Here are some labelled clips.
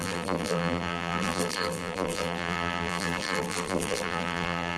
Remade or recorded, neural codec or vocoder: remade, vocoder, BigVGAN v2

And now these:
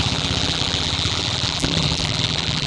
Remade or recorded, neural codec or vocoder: remade, vocoder, BigVGAN v2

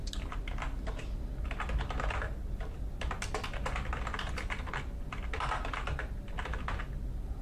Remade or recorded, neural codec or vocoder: recorded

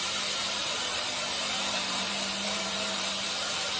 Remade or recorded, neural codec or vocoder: remade, vocoder, BigVGAN v2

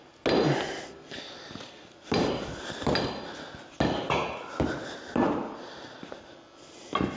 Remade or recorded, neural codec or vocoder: recorded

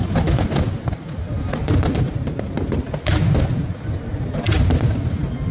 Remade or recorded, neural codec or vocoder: recorded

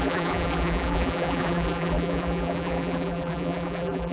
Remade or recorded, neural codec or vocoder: remade, vocoder, BigVGAN v2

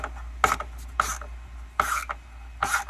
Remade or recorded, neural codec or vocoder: recorded